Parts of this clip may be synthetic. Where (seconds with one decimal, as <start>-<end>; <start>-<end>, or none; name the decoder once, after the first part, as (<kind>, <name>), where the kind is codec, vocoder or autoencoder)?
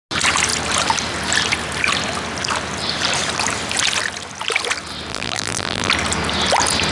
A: 5.1-5.9 (vocoder, BigVGAN v2)